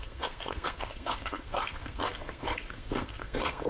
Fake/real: fake